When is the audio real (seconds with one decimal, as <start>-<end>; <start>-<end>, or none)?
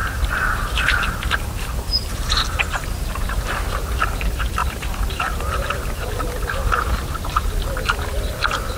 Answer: 0.5-2.0; 3.5-4.6; 6.1-8.8